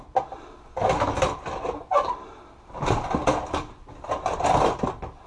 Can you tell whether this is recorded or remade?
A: recorded